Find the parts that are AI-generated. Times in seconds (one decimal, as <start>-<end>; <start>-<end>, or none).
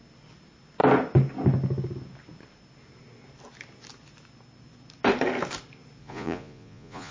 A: 6.0-7.1